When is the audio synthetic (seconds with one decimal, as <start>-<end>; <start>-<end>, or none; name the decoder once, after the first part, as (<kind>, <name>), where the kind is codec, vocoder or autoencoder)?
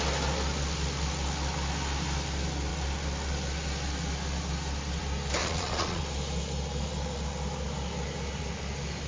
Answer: 5.4-6.0 (vocoder, Vocos)